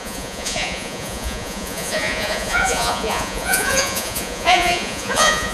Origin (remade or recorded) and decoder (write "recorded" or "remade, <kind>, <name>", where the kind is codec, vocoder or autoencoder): remade, vocoder, Vocos